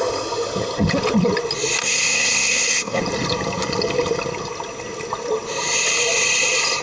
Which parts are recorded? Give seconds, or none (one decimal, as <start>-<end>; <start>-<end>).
0.0-1.8; 3.0-6.8

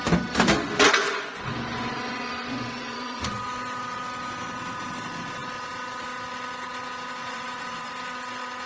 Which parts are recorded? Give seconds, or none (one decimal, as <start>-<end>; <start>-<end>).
0.0-1.0; 3.2-7.2; 7.9-8.7

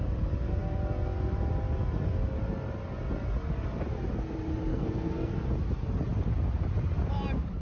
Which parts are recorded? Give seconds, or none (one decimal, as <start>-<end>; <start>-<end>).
0.0-4.7; 5.3-7.6

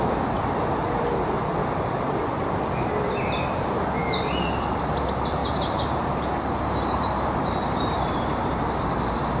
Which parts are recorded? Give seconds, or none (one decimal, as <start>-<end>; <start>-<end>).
0.0-4.0; 4.8-5.4

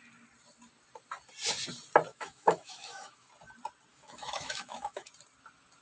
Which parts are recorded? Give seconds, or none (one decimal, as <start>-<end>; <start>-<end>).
0.0-2.1; 3.3-3.9; 5.1-5.8

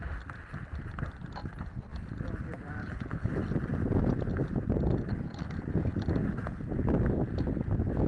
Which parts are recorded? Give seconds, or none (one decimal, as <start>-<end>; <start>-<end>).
0.0-2.8; 3.3-8.1